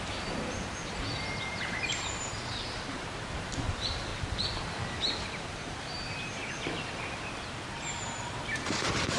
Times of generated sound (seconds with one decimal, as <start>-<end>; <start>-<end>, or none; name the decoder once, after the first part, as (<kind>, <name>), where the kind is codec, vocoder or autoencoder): 0.0-6.4 (vocoder, BigVGAN v2); 7.7-9.2